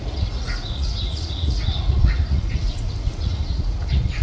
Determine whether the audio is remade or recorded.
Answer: remade